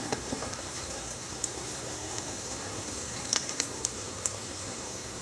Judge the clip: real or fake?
fake